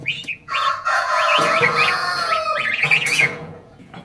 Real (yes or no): no